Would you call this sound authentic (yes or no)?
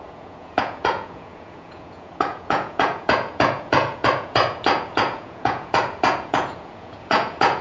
no